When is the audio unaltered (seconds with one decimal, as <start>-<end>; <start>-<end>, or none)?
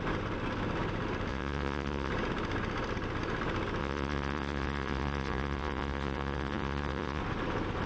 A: 0.0-1.3; 2.1-3.8; 7.2-7.9